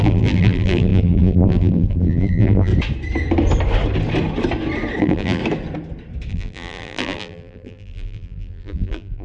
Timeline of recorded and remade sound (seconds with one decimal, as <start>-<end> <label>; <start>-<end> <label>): 0.0-2.7 remade; 2.7-5.0 recorded; 5.0-5.4 remade; 5.4-6.3 recorded; 6.3-9.2 remade